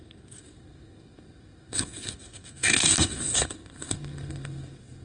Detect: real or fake fake